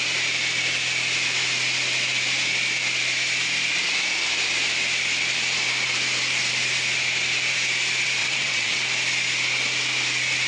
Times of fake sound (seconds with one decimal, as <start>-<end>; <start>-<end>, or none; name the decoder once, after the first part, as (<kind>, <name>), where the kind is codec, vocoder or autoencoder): 8.2-8.8 (vocoder, WaveNeXt)